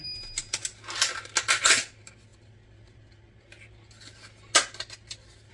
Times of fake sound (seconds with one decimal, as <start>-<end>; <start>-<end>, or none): none